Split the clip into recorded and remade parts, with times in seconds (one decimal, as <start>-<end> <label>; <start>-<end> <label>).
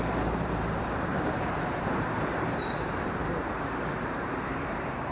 0.0-5.1 remade